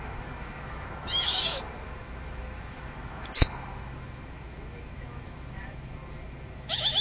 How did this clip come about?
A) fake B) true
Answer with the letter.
A